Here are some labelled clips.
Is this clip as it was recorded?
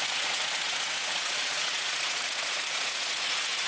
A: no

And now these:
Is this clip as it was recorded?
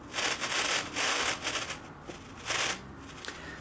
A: yes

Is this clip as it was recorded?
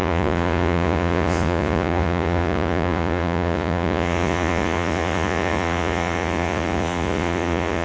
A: no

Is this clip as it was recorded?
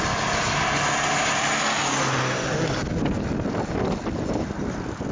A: yes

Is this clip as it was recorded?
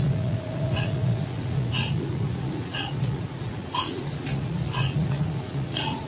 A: no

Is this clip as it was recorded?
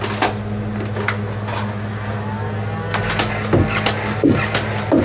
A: yes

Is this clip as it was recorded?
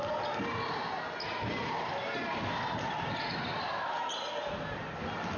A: yes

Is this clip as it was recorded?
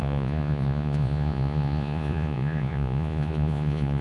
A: no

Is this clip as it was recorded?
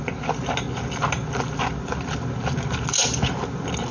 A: yes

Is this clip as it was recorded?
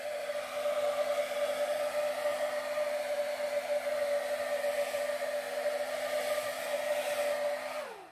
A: yes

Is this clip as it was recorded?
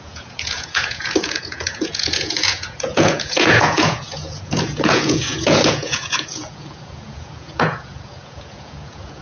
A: no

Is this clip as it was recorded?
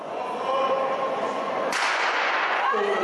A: no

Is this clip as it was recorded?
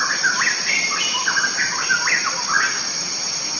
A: yes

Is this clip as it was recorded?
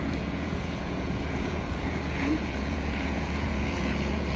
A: no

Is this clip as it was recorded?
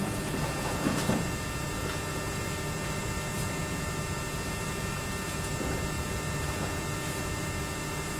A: no